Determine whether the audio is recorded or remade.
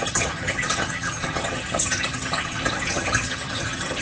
remade